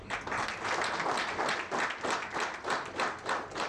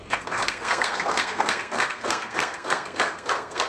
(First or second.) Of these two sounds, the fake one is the second